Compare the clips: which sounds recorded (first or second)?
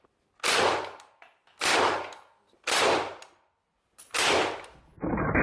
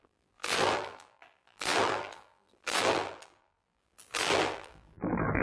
first